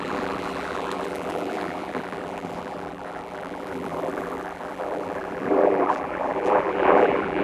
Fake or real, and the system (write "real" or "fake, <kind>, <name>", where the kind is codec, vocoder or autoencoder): fake, vocoder, BigVGAN v2